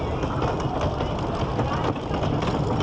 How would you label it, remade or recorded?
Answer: recorded